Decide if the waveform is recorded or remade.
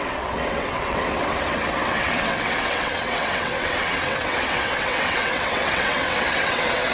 remade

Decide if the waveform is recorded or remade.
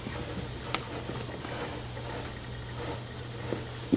recorded